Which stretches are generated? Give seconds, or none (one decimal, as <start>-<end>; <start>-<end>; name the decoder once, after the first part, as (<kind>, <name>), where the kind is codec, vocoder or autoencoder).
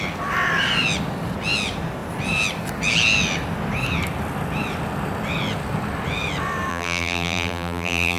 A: 6.7-8.2 (vocoder, BigVGAN v2)